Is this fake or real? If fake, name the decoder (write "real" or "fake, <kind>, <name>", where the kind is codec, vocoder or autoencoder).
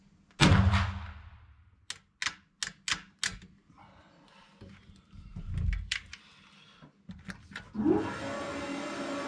real